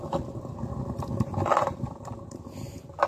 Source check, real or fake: real